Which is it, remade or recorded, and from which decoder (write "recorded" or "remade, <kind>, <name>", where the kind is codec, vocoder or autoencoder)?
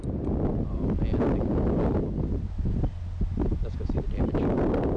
recorded